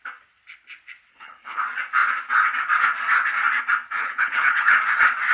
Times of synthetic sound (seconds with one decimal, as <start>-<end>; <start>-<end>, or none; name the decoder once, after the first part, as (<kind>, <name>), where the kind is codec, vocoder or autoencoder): 1.1-1.6 (codec, HILCodec); 4.0-4.7